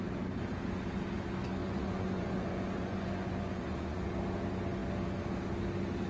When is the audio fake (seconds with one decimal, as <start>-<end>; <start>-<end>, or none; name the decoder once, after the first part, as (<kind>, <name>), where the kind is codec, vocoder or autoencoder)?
1.6-4.1 (vocoder, Vocos)